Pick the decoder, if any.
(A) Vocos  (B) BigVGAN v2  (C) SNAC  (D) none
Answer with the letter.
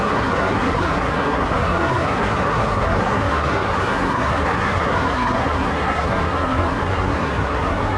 C